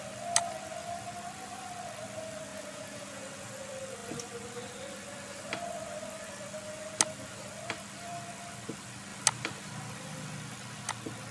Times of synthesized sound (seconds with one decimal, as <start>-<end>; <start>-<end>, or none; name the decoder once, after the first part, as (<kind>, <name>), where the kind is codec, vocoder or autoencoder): 2.5-3.5 (vocoder, Vocos)